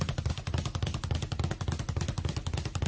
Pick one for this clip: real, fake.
fake